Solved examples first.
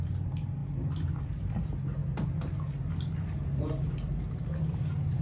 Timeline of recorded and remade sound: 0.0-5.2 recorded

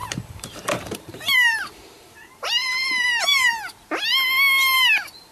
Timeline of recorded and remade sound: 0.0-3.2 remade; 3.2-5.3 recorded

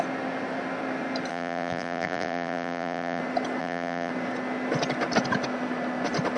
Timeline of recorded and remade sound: 0.0-1.3 recorded; 1.3-3.2 remade; 3.2-3.6 recorded; 3.6-4.1 remade; 4.1-6.4 recorded